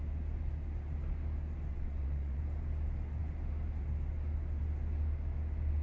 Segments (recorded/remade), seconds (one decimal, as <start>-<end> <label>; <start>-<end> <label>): 0.0-1.7 recorded; 1.7-2.4 remade; 2.4-5.8 recorded